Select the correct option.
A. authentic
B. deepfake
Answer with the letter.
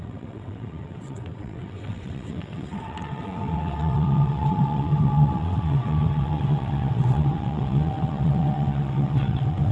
B